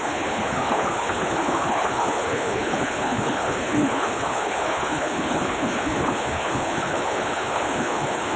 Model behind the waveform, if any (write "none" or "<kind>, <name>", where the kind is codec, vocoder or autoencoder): codec, HILCodec